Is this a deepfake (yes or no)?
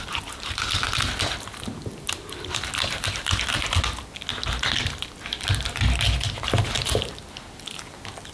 no